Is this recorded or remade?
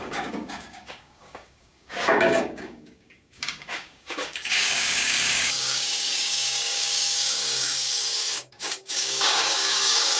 remade